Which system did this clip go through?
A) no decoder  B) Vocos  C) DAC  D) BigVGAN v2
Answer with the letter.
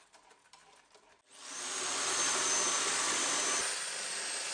A